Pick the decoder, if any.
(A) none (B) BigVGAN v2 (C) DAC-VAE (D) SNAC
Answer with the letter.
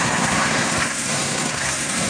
D